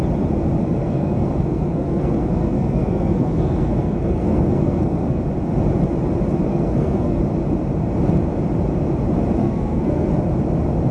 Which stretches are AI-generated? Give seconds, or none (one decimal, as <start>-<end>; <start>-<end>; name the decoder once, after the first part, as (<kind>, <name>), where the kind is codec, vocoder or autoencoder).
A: 0.6-5.2 (codec, SNAC); 6.5-7.2; 9.4-10.1